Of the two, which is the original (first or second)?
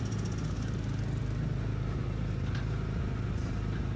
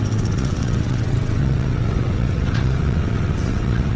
first